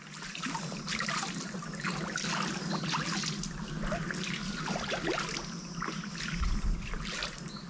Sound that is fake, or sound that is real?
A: real